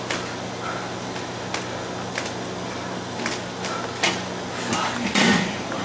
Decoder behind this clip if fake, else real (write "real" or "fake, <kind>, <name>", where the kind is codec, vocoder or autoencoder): real